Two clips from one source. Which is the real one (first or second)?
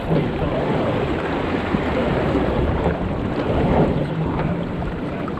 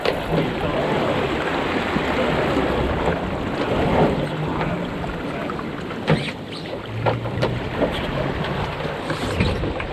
second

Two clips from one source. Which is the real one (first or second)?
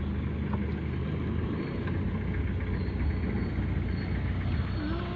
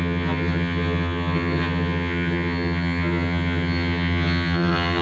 first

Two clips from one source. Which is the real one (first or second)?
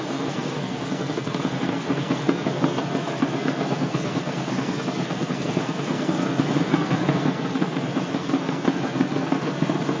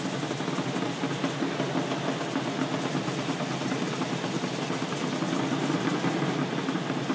second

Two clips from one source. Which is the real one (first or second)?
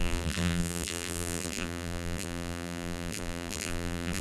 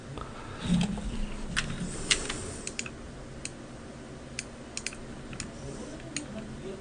second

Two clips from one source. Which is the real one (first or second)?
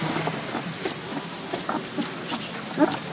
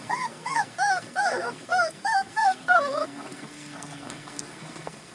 first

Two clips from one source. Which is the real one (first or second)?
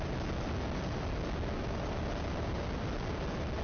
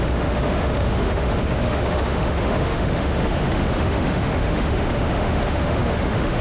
first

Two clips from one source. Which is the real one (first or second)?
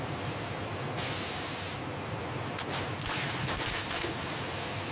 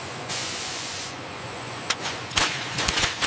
first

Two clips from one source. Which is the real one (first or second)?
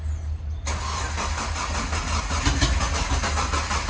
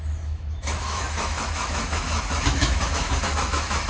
first